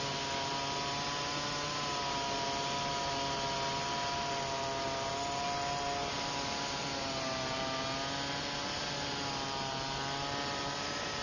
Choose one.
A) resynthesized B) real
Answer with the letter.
B